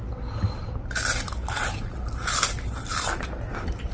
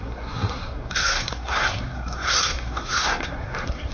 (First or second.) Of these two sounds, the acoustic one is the first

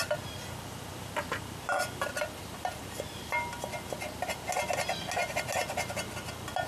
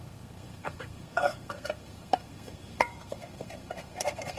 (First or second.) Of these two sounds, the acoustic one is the first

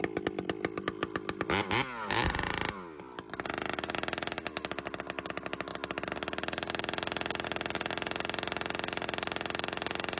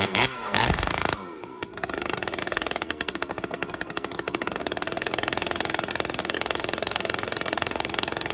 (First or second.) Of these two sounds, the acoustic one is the first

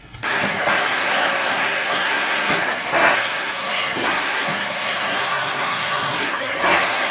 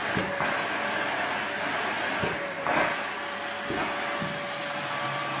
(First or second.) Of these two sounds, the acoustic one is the second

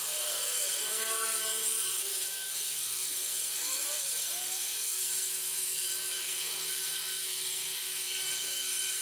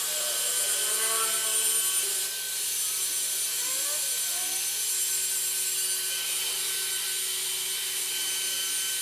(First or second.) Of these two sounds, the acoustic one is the second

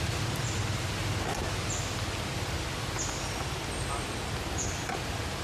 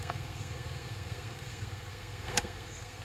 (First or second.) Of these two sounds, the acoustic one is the first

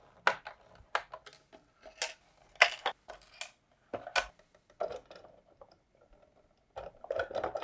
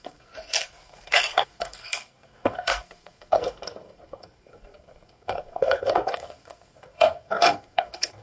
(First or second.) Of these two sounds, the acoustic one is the first